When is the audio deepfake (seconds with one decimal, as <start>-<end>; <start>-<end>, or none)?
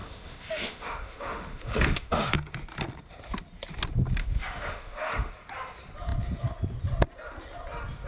0.0-2.3; 4.2-5.3